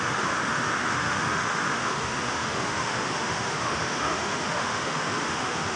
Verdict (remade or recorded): remade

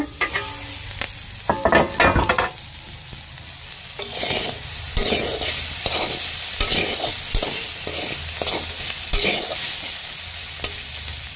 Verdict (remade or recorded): recorded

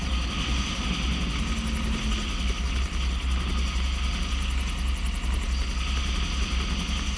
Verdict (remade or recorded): recorded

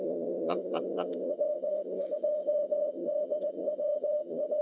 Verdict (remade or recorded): remade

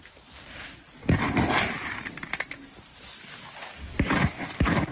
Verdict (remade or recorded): recorded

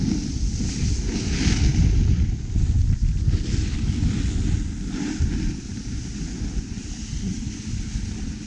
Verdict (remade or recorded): recorded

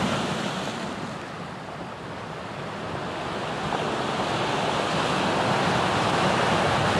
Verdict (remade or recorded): recorded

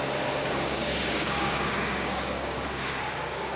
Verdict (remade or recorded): remade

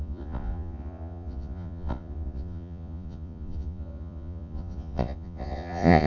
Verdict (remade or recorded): remade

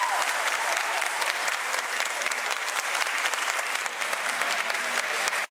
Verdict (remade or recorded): remade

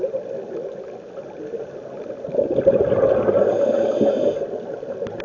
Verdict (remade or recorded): recorded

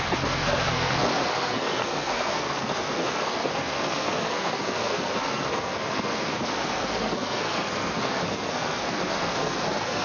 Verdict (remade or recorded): remade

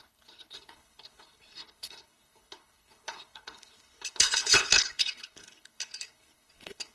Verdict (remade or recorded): remade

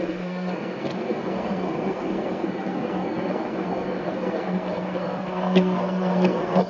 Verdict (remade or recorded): remade